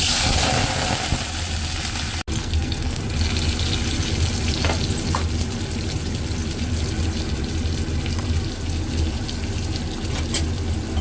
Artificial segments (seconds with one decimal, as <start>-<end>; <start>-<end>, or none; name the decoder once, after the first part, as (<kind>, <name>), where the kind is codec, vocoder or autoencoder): 2.4-3.0 (codec, SNAC)